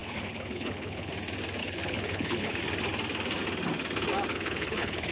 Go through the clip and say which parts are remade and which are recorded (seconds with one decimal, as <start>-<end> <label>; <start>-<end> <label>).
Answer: 0.0-1.1 remade; 1.1-1.6 recorded; 1.6-2.6 remade; 2.6-4.3 recorded; 4.3-5.1 remade